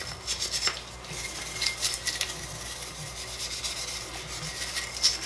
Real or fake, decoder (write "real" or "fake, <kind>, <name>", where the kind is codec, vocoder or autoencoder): real